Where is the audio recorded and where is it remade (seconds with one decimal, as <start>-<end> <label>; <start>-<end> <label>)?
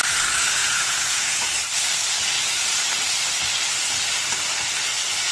0.0-0.6 recorded; 0.6-1.4 remade; 1.4-5.3 recorded